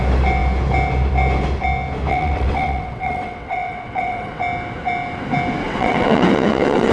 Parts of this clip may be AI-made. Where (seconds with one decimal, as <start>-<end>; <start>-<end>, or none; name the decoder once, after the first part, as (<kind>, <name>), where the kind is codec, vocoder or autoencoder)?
2.1-4.4 (vocoder, WaveNeXt); 5.6-6.9

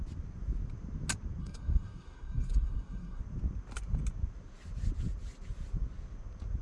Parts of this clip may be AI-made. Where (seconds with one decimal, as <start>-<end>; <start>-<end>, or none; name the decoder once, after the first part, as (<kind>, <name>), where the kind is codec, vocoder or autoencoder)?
1.4-3.2 (codec, SNAC)

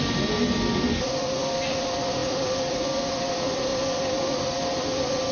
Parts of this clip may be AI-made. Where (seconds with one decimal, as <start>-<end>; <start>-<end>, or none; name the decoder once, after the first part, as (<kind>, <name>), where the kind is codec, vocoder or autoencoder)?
none

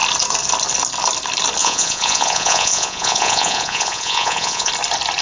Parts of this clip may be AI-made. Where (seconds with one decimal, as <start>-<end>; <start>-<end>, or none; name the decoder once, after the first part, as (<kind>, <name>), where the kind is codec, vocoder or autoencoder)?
1.6-4.7 (vocoder, Vocos)

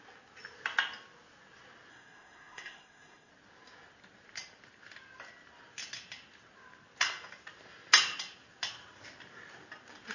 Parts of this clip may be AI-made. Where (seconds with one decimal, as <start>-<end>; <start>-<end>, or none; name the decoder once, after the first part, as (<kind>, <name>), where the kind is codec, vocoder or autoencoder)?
1.9-3.3 (codec, SNAC)

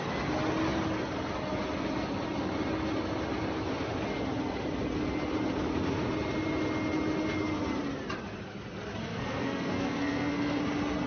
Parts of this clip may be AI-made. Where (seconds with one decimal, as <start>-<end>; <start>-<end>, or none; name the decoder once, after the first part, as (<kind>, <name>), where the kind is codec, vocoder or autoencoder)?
9.0-10.6 (codec, SNAC)

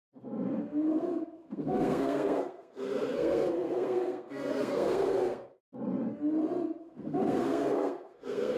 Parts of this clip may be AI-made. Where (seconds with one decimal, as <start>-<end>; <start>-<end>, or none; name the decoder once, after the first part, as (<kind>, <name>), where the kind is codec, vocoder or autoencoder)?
0.0-5.5 (codec, SNAC); 6.8-8.6

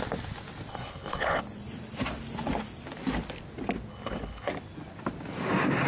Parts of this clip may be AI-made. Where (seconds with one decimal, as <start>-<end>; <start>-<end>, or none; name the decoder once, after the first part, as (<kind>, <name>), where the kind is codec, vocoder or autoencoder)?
0.7-1.4 (codec, HILCodec); 3.9-4.5